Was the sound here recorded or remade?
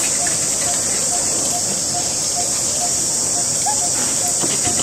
recorded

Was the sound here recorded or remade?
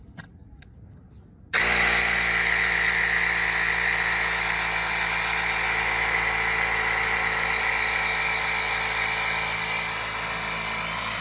recorded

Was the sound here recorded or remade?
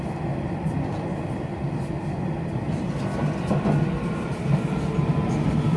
recorded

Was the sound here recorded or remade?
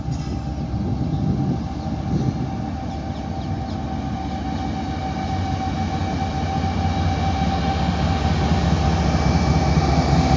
recorded